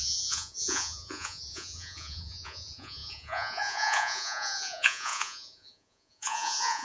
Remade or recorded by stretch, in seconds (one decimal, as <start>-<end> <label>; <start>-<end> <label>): 0.0-6.8 remade